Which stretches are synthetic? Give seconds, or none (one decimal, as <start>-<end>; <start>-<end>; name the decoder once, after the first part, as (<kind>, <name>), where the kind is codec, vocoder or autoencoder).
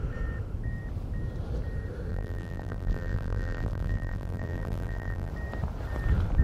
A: 2.1-5.3 (vocoder, BigVGAN v2)